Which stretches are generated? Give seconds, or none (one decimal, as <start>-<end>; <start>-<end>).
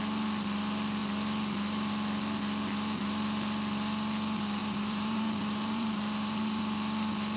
4.6-6.6